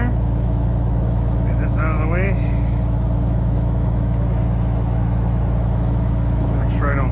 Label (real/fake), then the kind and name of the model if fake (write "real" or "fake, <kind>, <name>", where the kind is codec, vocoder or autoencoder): fake, autoencoder, DAC-VAE